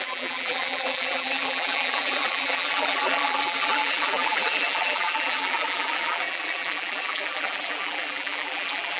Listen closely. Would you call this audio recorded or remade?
remade